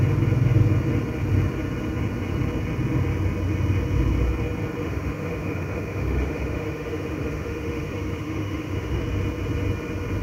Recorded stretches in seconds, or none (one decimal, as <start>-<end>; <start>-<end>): 0.0-4.8; 9.0-10.2